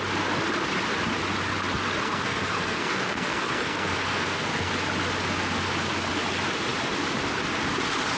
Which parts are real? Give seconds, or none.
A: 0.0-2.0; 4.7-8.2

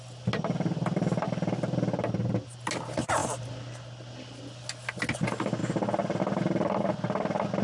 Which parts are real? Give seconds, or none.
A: 0.0-7.6